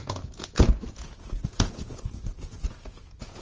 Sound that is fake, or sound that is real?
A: fake